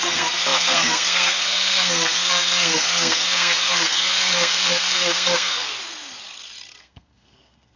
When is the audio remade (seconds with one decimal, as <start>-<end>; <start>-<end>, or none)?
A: 0.0-5.7; 6.8-7.8

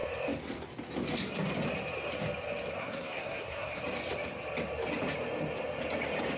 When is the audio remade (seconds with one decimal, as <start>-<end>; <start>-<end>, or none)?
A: 2.7-3.8

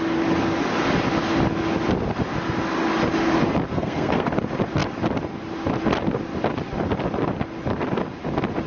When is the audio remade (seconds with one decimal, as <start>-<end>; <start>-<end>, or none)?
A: 3.7-4.3

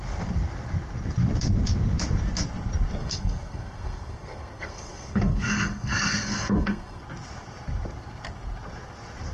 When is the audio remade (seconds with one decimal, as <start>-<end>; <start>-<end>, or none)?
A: 3.0-7.0

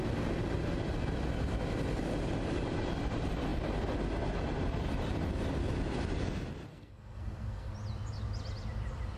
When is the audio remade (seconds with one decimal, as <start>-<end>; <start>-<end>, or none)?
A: 6.7-7.7